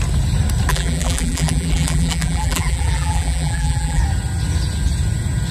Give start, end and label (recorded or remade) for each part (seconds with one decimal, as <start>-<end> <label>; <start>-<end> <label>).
0.0-0.7 recorded; 0.7-4.0 remade; 4.0-5.5 recorded